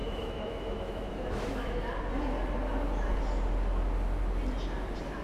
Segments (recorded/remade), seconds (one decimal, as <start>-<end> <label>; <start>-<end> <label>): 0.0-1.8 remade; 1.8-5.2 recorded